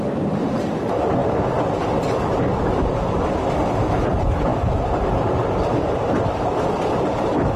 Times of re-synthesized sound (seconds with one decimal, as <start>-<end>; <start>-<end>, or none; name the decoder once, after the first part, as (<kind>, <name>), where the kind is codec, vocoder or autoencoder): none